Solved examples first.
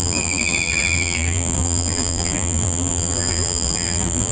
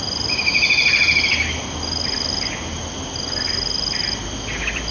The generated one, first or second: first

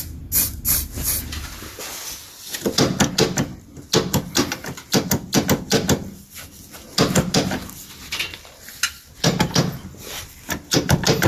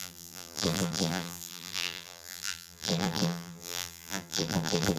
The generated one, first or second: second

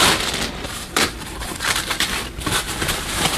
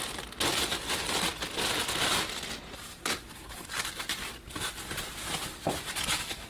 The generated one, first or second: first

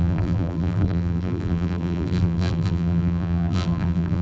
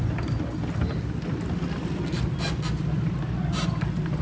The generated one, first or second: first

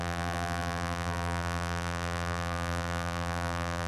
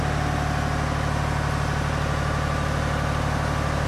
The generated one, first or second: first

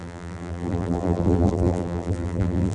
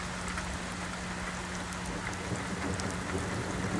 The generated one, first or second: first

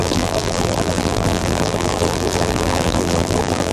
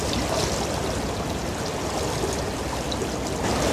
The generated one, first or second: first